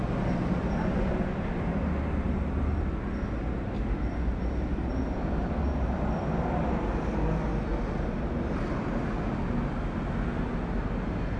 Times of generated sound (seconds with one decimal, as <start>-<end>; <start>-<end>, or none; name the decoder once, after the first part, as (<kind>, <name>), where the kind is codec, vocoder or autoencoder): none